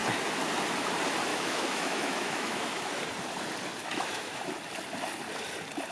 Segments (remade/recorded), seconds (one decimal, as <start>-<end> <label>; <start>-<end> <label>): 0.0-1.3 recorded; 1.3-3.0 remade; 3.0-3.8 recorded; 3.8-4.5 remade; 4.5-5.9 recorded